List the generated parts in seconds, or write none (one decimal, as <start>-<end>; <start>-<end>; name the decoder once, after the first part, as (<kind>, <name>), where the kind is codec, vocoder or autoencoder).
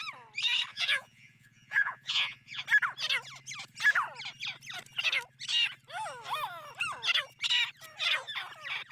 0.7-2.6 (vocoder, Vocos)